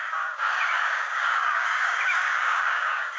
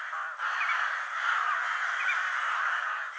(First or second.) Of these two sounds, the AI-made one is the first